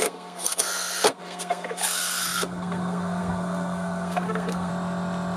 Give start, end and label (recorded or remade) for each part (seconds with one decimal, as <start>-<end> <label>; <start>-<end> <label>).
0.0-4.7 remade; 4.7-5.4 recorded

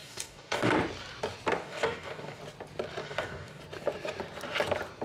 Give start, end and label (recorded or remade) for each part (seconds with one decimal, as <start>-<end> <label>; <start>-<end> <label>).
0.0-0.7 remade; 0.7-1.6 recorded; 1.6-2.4 remade; 2.4-3.0 recorded; 3.0-3.6 remade; 3.6-5.0 recorded